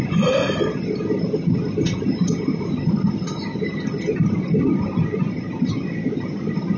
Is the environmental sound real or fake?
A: real